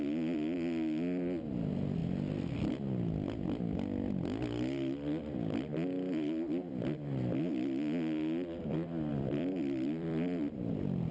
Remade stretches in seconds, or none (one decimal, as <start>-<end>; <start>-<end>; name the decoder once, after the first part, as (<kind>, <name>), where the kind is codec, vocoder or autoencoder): 9.1-10.7 (vocoder, BigVGAN v2)